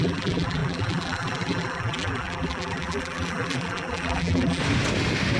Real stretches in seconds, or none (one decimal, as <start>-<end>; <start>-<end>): 4.6-5.4